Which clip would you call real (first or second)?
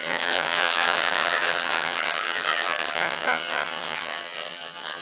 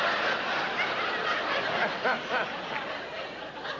second